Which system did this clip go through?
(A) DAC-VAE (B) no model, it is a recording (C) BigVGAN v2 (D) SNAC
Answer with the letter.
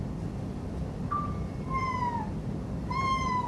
B